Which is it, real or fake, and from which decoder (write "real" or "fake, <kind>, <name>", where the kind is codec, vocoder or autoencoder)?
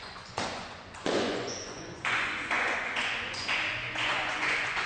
fake, vocoder, Vocos